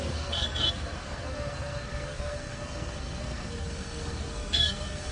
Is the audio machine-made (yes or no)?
yes